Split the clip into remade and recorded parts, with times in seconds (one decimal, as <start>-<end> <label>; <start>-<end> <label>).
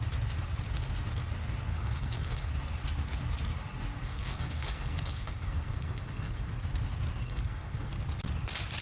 0.0-1.7 recorded; 1.7-2.5 remade; 2.5-4.0 recorded; 4.0-6.5 remade; 6.5-7.2 recorded; 7.2-7.9 remade; 7.9-8.8 recorded